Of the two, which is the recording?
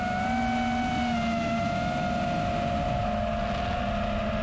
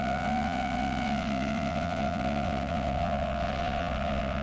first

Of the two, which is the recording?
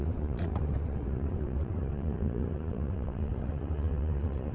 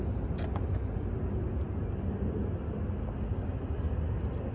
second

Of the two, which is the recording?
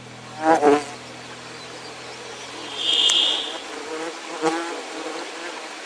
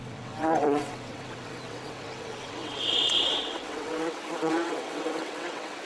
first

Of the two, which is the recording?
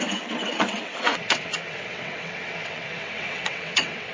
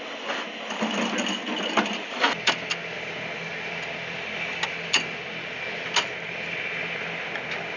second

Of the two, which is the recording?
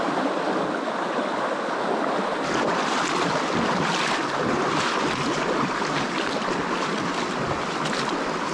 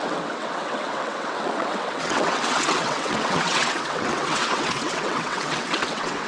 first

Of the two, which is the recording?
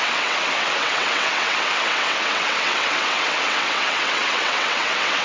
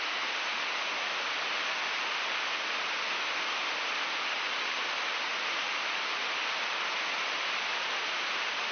second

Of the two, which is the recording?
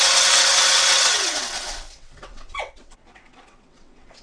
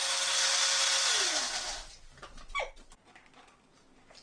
second